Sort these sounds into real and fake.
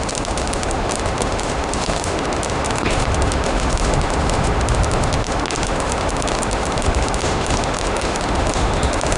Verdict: fake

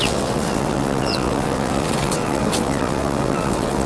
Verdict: fake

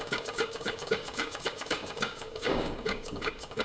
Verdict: fake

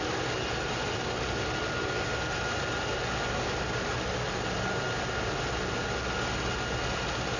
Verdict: real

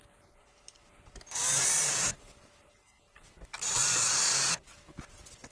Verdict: real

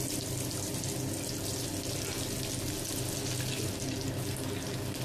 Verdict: real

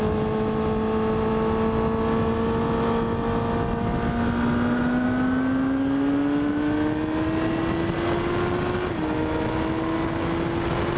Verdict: real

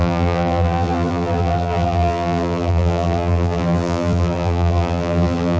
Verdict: fake